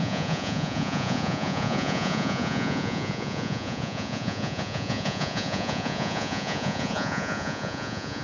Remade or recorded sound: remade